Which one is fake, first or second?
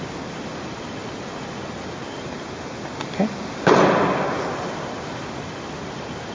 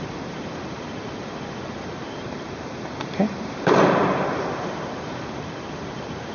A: second